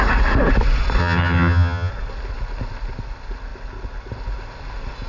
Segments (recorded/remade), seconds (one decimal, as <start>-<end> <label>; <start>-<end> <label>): 0.0-1.0 recorded; 1.0-1.9 remade; 1.9-5.1 recorded